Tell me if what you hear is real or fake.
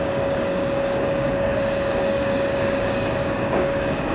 fake